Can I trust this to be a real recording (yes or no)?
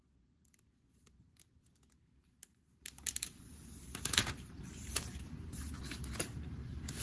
no